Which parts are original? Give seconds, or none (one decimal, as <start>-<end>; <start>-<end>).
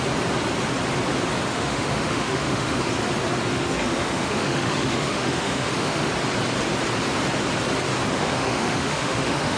0.0-1.5; 2.9-3.5; 6.1-8.1